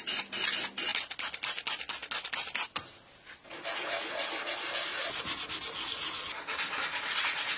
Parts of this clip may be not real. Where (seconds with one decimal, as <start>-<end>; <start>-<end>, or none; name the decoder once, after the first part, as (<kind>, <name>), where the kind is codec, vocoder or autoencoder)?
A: none